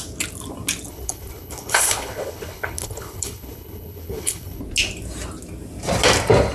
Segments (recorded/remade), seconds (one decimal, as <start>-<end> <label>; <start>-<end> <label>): 0.0-0.9 recorded; 0.9-4.6 remade; 4.6-6.5 recorded